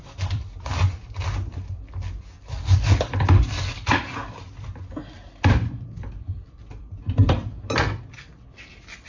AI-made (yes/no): yes